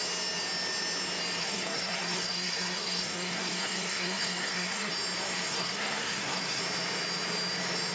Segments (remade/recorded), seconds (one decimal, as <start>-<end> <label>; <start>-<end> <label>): 0.0-1.4 recorded; 1.4-4.9 remade; 4.9-5.5 recorded; 5.5-6.6 remade; 6.6-7.9 recorded